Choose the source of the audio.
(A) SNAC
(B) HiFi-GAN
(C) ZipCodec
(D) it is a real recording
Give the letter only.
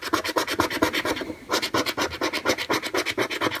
D